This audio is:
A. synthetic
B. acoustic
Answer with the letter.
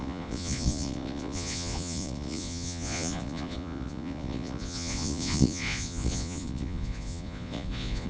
A